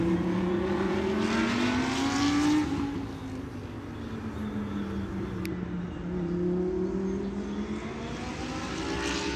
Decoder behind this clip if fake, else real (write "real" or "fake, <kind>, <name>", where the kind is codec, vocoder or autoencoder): real